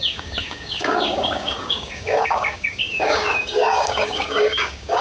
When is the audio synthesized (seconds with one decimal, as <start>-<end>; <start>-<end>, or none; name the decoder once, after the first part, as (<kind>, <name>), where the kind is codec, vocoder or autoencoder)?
0.0-5.0 (codec, DAC)